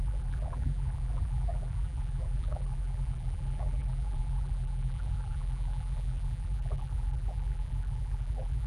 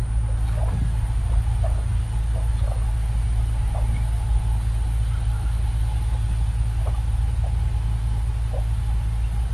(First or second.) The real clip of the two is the second